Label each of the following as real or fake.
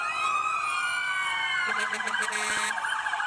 fake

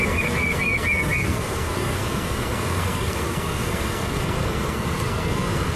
fake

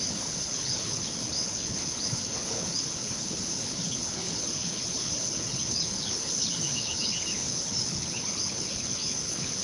fake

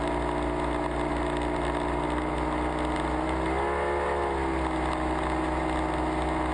real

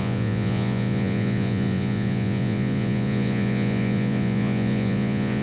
fake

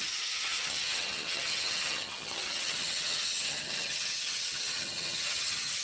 fake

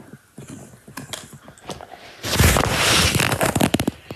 real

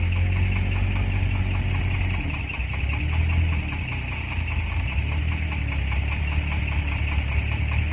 real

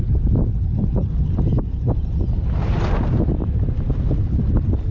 real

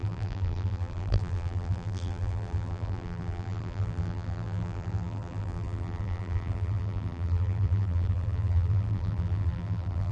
fake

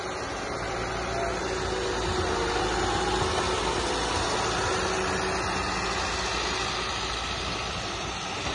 real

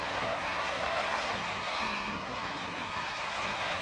fake